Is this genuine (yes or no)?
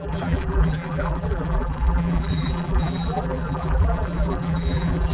no